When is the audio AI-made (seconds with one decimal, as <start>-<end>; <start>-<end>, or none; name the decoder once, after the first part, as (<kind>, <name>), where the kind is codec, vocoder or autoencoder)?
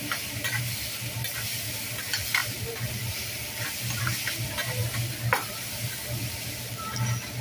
2.4-3.8 (vocoder, BigVGAN v2)